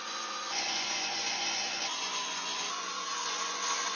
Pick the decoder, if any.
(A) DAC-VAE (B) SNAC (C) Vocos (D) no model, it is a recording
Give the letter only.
C